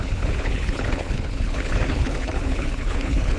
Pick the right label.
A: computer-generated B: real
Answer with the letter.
A